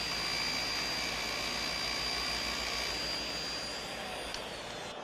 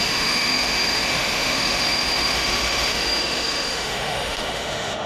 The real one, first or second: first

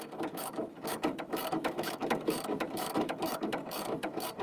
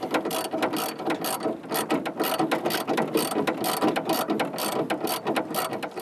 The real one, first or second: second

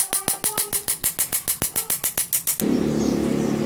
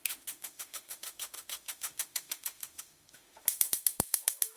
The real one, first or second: first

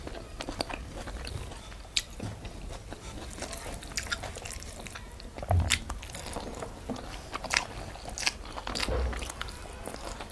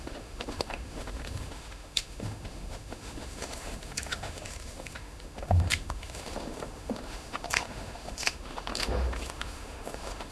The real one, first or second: first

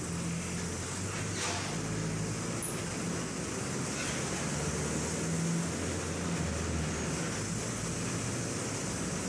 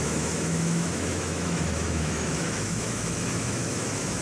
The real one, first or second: first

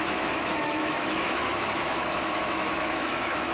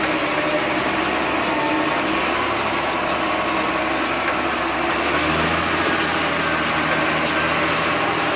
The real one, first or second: second